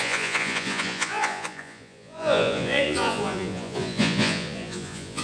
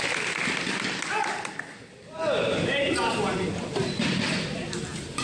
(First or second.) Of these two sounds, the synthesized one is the first